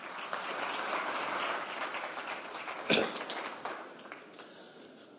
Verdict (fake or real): real